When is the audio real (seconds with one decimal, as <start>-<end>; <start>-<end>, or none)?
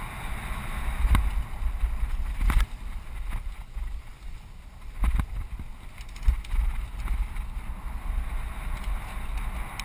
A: 0.0-9.8